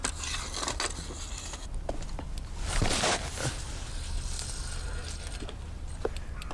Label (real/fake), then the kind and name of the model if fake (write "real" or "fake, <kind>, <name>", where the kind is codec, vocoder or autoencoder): real